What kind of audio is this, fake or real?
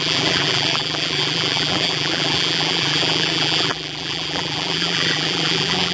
fake